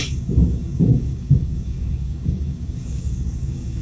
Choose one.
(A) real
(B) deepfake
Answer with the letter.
B